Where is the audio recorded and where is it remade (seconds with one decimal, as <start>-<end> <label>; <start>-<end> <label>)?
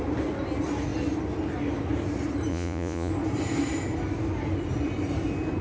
0.0-2.5 recorded; 2.5-3.1 remade; 3.1-5.6 recorded